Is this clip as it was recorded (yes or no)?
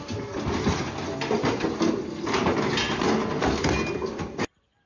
yes